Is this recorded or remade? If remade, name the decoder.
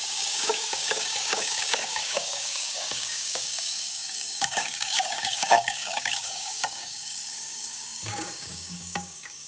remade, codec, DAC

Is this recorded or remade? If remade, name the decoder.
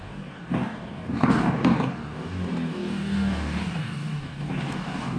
remade, codec, DAC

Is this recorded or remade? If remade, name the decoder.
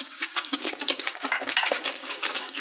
remade, codec, DAC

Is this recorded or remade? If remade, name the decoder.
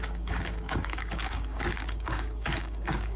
remade, codec, DAC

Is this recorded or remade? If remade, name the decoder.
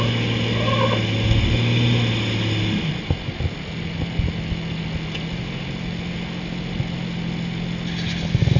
recorded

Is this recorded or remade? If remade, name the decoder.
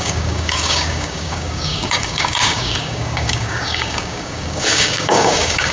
remade, codec, DAC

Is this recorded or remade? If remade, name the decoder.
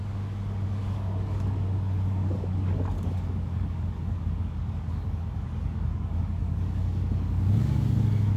remade, codec, DAC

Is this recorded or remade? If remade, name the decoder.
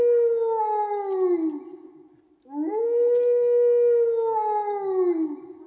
recorded